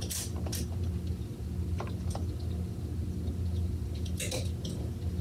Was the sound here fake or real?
real